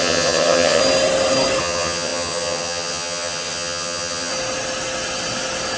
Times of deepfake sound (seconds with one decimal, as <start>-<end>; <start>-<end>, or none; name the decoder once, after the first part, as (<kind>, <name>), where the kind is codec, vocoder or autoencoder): 0.0-0.8 (vocoder, HiFi-GAN); 1.6-4.3